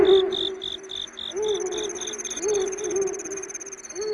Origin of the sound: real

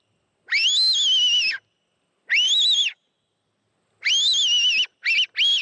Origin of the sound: real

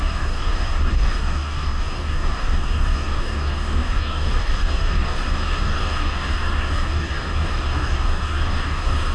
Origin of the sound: fake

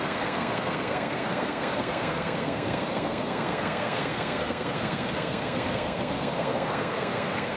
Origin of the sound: fake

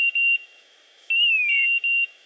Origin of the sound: fake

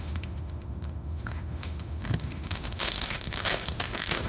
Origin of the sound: fake